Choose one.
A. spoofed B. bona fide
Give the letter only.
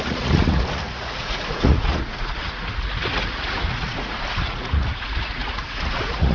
A